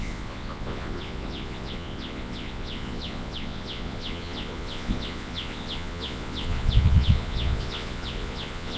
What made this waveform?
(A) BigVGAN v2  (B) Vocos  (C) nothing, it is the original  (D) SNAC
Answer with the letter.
B